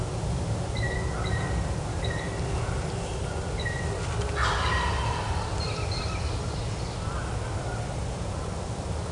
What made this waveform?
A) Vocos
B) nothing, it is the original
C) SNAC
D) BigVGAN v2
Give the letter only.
B